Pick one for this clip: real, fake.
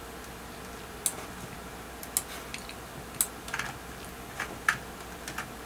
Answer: real